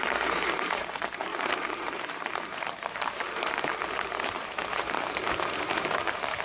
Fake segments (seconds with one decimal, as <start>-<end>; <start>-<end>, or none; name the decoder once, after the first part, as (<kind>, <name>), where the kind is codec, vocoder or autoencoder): 0.0-6.4 (vocoder, BigVGAN v2)